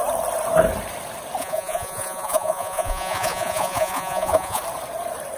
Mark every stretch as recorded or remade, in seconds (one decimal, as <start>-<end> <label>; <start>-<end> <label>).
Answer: 0.0-1.4 recorded; 1.4-4.6 remade; 4.6-5.4 recorded

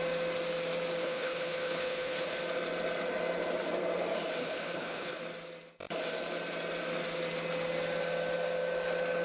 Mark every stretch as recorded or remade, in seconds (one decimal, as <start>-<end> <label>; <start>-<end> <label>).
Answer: 0.0-1.0 recorded; 1.0-2.4 remade; 2.4-4.4 recorded; 4.4-5.2 remade; 5.2-9.2 recorded